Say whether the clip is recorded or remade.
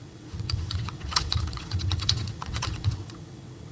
remade